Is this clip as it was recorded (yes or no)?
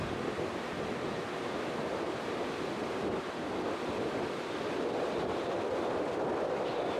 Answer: no